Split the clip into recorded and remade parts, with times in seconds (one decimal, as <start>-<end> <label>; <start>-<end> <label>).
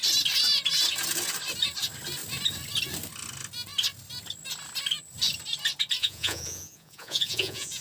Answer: 0.0-6.0 recorded; 6.0-7.8 remade